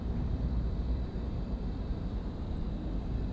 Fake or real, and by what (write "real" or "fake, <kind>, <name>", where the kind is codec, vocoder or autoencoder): fake, vocoder, BigVGAN v2